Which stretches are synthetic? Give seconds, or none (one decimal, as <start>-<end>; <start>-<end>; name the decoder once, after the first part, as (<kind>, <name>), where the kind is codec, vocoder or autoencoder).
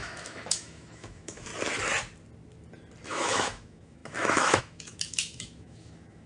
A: 0.0-1.5 (autoencoder, DAC-VAE); 3.1-6.3